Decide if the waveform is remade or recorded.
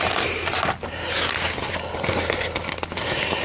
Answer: recorded